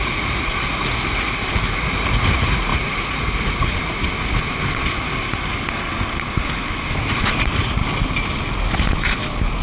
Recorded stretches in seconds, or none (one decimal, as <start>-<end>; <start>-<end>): 3.7-7.1; 7.8-9.6